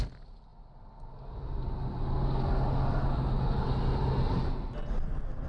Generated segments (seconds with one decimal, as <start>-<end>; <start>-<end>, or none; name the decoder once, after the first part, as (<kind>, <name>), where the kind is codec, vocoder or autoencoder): none